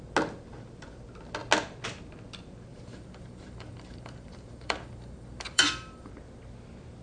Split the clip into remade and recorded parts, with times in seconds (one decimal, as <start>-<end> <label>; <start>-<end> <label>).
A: 0.0-2.7 recorded; 2.7-6.1 remade; 6.1-7.0 recorded